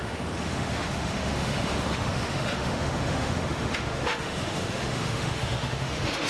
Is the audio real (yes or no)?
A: no